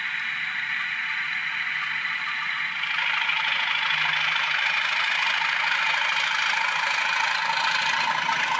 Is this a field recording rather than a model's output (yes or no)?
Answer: yes